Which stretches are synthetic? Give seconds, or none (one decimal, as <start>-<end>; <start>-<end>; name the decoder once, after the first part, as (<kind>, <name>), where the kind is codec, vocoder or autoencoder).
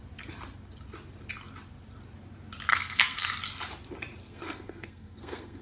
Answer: 2.7-3.3 (codec, SNAC); 4.2-5.6